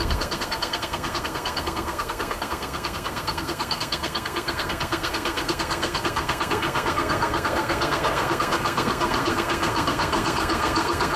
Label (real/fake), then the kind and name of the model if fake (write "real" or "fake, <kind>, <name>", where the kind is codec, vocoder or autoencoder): fake, codec, SNAC